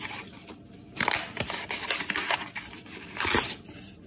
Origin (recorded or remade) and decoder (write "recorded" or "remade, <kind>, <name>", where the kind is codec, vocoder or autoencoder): recorded